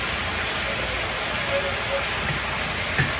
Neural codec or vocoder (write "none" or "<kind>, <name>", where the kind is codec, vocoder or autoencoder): none